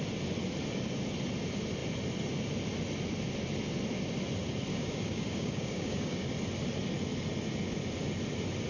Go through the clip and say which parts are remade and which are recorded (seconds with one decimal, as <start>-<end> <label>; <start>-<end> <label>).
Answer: 0.0-4.7 recorded; 4.7-6.3 remade; 6.3-8.7 recorded